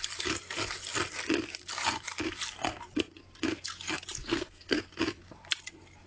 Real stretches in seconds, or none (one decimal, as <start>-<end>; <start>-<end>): 0.0-4.2; 4.8-6.1